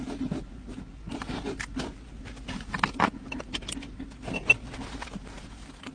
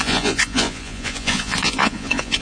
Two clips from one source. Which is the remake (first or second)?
second